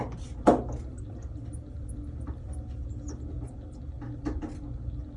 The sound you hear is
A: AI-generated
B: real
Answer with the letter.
B